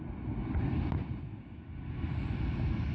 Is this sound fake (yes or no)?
no